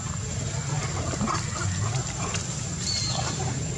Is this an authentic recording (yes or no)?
yes